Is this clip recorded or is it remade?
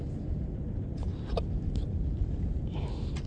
recorded